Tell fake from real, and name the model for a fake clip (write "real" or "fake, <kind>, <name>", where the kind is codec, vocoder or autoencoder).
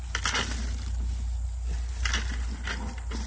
real